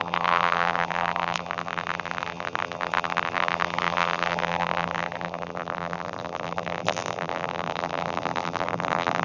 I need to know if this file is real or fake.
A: fake